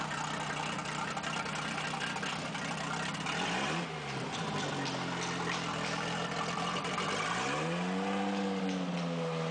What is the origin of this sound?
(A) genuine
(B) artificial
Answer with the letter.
A